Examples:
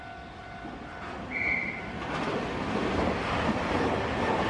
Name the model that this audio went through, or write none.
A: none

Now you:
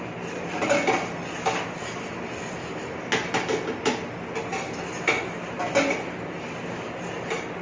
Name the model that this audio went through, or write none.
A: none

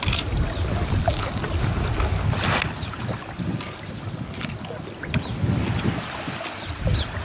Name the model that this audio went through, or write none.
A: none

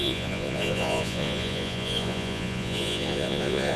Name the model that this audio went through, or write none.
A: vocoder, Vocos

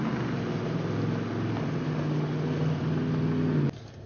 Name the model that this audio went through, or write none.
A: none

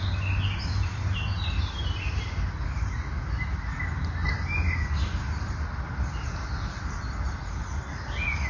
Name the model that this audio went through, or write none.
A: none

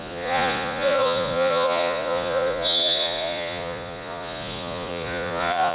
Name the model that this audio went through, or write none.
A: vocoder, Vocos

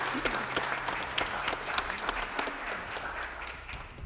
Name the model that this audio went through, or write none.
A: none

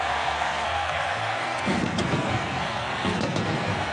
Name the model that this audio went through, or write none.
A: codec, SNAC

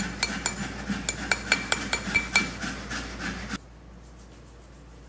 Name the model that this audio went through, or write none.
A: none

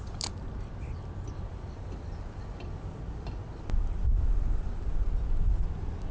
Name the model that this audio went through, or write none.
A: none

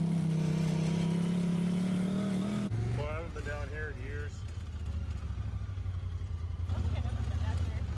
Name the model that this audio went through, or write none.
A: none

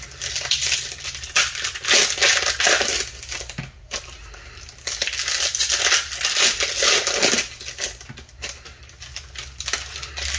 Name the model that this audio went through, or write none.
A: none